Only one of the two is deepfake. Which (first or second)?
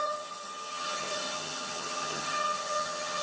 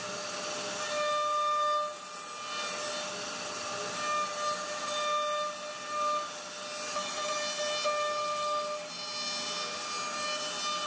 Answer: first